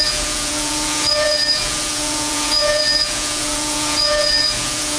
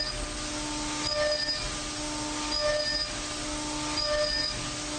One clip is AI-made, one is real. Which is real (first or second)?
second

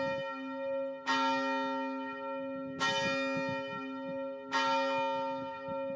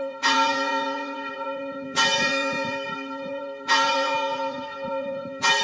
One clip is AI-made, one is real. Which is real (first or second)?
first